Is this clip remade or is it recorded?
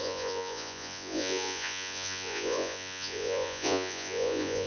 remade